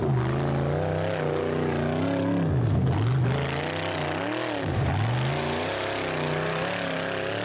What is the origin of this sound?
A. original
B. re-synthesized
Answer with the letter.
A